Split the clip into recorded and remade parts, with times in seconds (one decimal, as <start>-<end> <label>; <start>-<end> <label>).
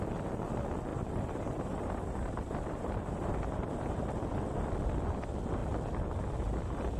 0.0-0.9 recorded; 0.9-4.1 remade; 4.1-7.0 recorded